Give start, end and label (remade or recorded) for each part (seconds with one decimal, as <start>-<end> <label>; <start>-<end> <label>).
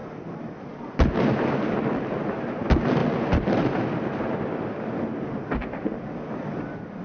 0.0-7.0 recorded